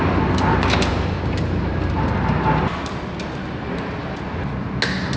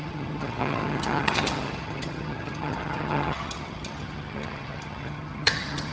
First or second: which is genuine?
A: first